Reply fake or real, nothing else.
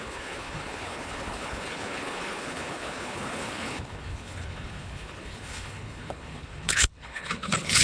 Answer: fake